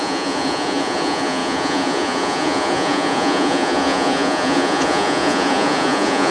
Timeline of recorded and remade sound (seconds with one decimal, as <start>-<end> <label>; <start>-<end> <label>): 0.0-6.3 remade